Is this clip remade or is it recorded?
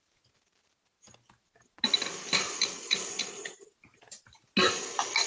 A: recorded